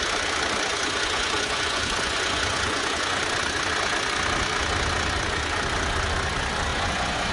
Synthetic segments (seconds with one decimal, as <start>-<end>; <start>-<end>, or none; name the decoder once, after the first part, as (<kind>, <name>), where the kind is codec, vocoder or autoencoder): 0.7-3.2 (vocoder, Vocos); 6.7-7.3